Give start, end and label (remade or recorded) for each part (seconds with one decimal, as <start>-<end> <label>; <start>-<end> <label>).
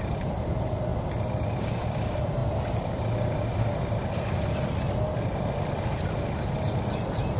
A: 0.0-0.9 remade; 0.9-1.6 recorded; 1.6-2.4 remade; 2.4-6.4 recorded; 6.4-7.4 remade